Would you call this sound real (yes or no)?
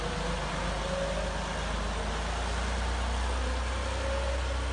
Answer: yes